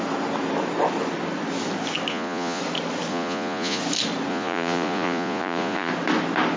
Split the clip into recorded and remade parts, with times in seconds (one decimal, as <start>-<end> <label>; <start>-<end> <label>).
0.0-2.1 recorded; 2.1-2.6 remade; 2.6-3.1 recorded; 3.1-3.8 remade; 3.8-4.3 recorded; 4.3-5.9 remade; 5.9-6.6 recorded